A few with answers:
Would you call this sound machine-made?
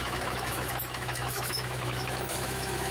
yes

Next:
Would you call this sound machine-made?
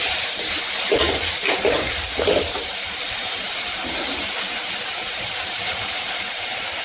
yes